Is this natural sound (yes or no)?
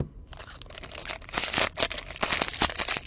yes